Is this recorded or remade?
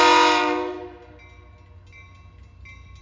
recorded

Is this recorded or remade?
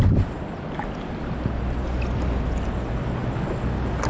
recorded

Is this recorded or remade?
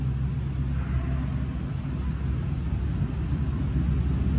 recorded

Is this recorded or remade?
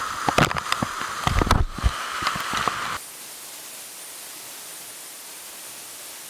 recorded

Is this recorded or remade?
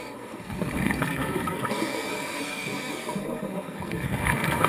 remade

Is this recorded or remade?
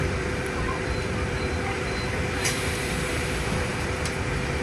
remade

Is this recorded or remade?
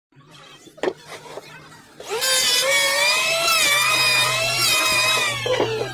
remade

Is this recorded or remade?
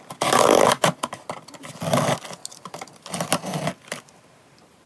recorded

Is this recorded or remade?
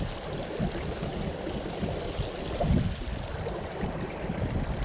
recorded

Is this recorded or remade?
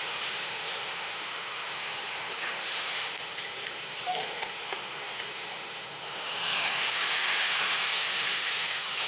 remade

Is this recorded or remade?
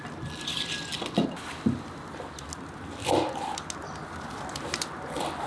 recorded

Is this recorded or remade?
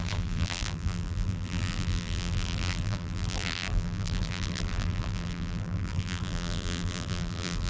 remade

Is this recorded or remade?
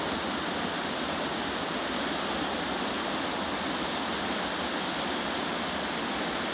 recorded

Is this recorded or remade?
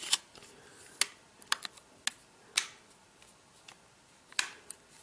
recorded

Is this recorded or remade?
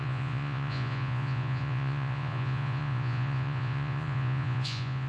remade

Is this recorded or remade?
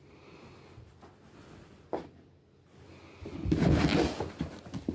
recorded